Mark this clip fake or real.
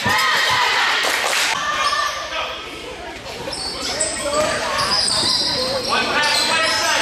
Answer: fake